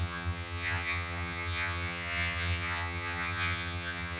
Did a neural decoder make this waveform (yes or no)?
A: yes